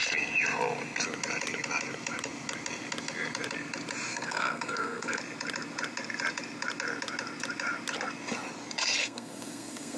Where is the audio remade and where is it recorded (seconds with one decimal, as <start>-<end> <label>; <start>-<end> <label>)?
0.0-4.1 recorded; 4.1-5.2 remade; 5.2-9.0 recorded; 9.0-10.0 remade